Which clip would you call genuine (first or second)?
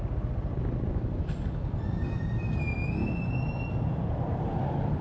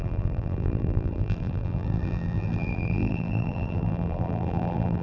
first